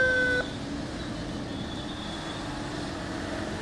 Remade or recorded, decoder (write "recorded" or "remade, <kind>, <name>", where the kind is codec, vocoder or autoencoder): recorded